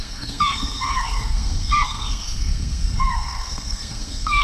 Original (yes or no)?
no